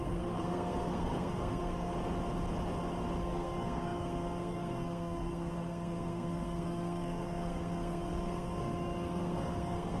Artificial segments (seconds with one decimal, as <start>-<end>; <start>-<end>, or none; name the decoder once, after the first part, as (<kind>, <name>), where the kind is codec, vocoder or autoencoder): 0.0-1.9 (codec, SNAC); 3.2-10.0